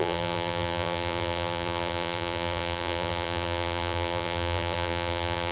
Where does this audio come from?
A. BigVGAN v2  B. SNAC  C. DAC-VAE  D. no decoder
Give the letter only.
A